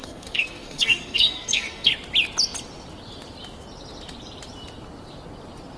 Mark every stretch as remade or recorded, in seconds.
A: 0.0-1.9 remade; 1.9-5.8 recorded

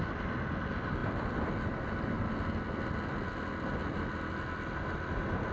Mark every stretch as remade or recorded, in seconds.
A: 0.0-5.5 recorded

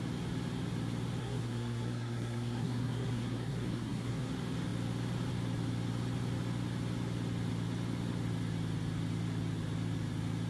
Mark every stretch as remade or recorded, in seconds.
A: 0.0-1.2 recorded; 1.2-4.3 remade; 4.3-10.5 recorded